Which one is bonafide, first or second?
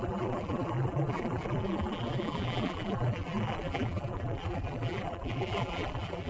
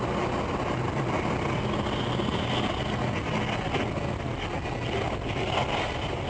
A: second